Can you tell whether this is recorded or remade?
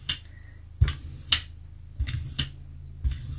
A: recorded